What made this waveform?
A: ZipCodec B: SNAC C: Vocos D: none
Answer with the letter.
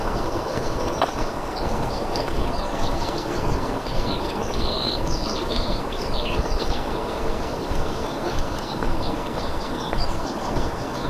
B